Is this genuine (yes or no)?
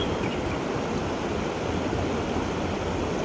yes